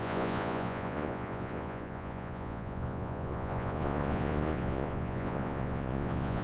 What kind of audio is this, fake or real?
fake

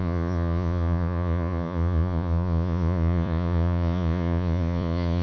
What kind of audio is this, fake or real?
fake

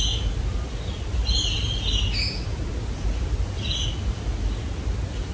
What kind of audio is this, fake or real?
real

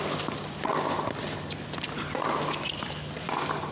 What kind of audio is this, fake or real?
real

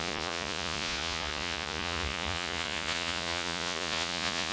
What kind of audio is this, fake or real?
fake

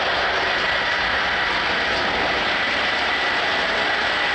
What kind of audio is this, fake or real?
real